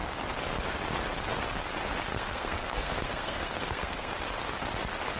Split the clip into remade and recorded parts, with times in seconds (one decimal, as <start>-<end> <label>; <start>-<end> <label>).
0.0-2.1 recorded; 2.1-4.1 remade; 4.1-5.2 recorded